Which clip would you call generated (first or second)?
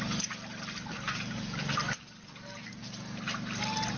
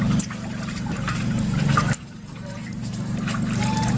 second